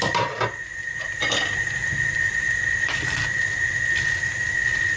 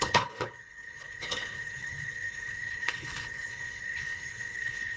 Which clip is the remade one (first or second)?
second